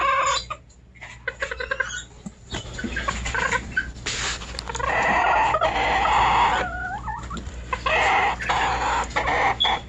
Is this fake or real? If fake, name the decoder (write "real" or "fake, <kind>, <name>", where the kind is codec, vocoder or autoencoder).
real